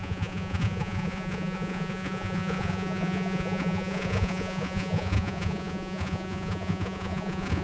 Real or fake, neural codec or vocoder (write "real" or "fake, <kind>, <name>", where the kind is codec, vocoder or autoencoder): fake, vocoder, Vocos